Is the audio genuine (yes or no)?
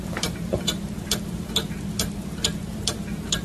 no